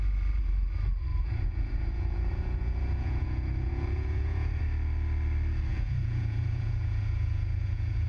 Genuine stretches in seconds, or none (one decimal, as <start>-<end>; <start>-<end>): 0.0-1.1; 4.6-5.7